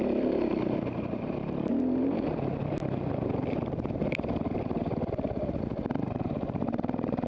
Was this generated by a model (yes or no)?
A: yes